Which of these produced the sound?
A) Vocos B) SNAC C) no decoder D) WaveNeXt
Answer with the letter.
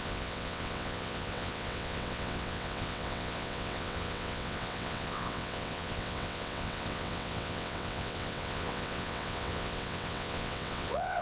D